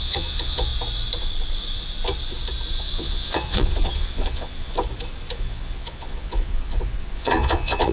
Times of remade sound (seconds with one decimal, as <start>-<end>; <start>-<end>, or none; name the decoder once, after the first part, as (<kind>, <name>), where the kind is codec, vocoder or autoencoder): 0.0-0.7 (vocoder, Vocos); 2.8-4.7; 5.3-7.9